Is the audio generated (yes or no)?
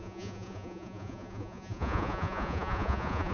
yes